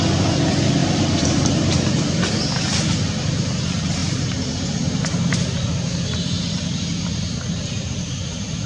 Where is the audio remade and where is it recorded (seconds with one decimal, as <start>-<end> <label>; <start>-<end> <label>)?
0.0-0.8 recorded; 0.8-2.2 remade; 2.2-4.0 recorded; 4.0-8.2 remade; 8.2-8.7 recorded